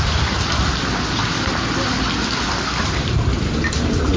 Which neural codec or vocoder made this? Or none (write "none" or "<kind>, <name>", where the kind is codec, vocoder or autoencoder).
vocoder, BigVGAN v2